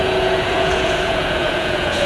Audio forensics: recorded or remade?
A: remade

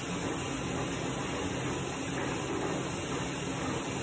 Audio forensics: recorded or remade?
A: recorded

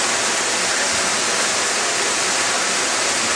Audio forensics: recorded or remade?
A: recorded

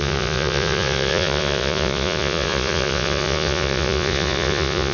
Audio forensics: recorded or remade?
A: remade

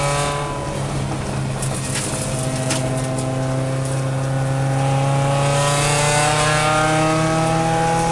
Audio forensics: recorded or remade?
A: recorded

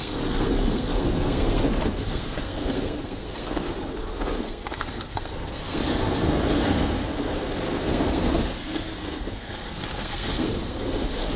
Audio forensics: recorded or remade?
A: remade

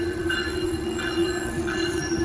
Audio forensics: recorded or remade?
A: remade